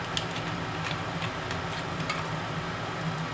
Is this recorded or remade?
recorded